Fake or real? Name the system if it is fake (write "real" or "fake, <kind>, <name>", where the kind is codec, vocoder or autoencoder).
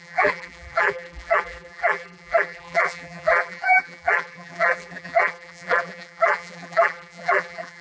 fake, vocoder, BigVGAN v2